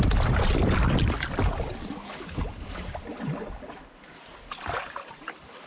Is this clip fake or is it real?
real